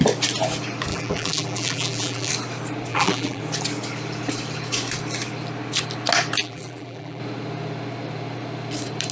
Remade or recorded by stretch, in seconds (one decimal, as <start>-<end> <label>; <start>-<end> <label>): 0.0-0.9 recorded; 0.9-2.3 remade; 2.3-2.9 recorded; 2.9-3.4 remade; 3.4-6.4 recorded; 6.4-7.2 remade; 7.2-9.1 recorded